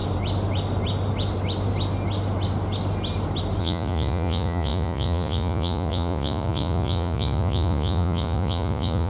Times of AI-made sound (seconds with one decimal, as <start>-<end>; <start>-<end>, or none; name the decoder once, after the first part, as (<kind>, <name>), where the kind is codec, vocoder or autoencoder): 3.6-9.1 (vocoder, Vocos)